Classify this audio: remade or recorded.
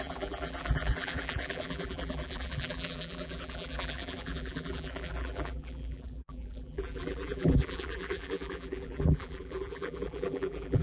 remade